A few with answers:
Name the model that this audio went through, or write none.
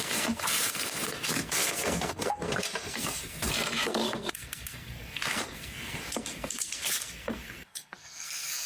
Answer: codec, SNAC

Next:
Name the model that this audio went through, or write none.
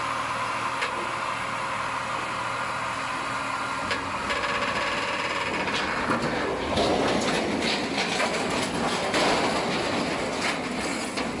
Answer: none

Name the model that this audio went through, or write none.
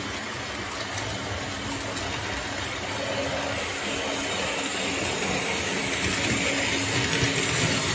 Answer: none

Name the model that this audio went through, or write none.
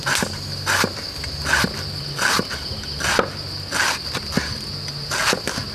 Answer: none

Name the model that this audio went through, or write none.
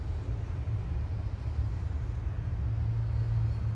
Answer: none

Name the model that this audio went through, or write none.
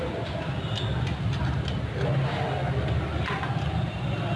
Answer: none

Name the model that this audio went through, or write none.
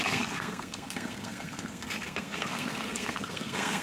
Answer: codec, SNAC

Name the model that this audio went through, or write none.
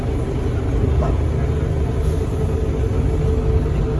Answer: none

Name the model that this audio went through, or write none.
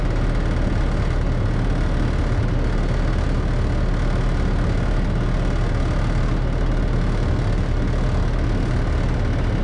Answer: none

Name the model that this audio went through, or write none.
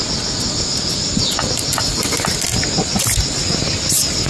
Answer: none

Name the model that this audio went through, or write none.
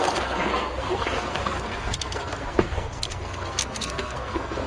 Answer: codec, SNAC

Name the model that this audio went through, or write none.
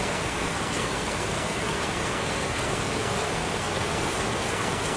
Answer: codec, SNAC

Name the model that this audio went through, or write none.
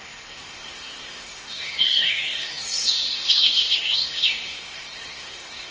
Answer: codec, SNAC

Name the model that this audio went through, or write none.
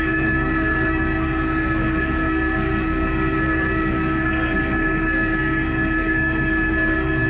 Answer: codec, SNAC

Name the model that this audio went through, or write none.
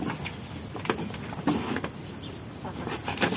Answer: none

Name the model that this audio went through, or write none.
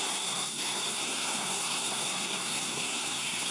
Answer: codec, SNAC